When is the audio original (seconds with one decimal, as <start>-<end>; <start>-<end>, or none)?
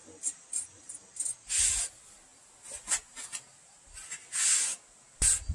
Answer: 0.0-5.5